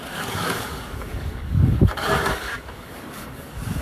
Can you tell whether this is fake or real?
fake